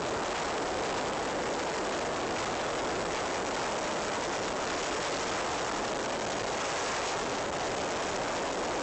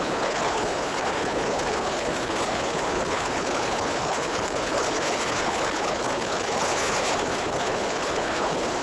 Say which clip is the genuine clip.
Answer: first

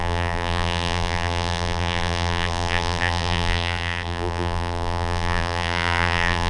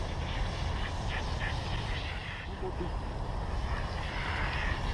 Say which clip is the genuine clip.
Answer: second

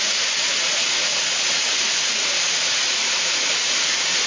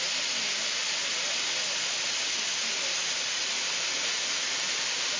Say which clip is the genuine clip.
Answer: second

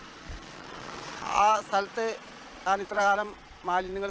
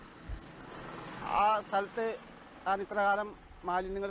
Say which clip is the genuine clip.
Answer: second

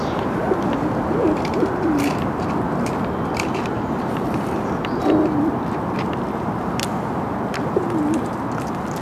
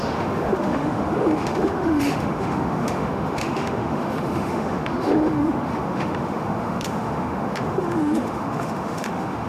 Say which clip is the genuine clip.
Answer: first